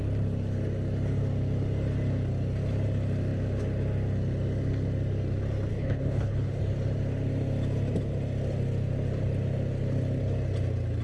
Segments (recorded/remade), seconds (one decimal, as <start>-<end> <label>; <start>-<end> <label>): 0.0-5.7 recorded; 5.7-6.6 remade; 6.6-11.0 recorded